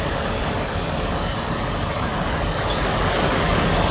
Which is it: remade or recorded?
remade